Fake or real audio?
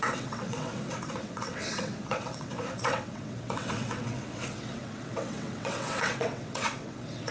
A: fake